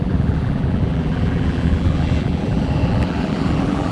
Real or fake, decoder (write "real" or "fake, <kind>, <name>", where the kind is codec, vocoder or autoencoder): fake, vocoder, BigVGAN v2